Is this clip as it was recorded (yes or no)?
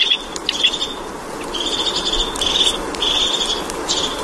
yes